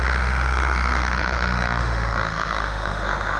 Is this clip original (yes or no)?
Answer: no